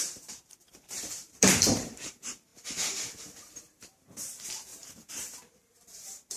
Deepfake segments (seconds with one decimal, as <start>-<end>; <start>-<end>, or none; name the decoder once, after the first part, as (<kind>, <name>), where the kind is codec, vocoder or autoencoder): 0.0-6.4 (vocoder, BigVGAN v2)